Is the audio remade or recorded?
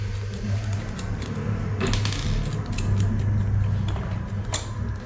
recorded